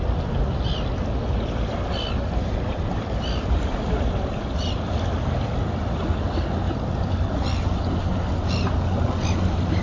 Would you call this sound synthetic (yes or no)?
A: no